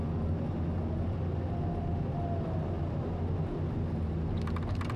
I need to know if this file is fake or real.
real